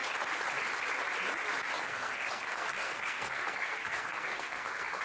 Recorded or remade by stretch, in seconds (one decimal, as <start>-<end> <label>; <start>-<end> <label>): 0.0-1.8 recorded; 1.8-5.0 remade